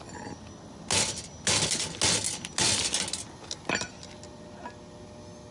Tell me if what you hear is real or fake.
real